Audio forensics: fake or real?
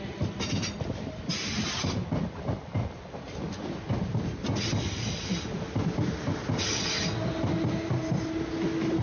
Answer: real